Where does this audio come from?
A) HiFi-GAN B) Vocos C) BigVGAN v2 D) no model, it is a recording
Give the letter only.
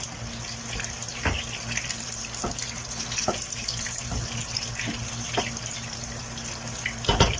C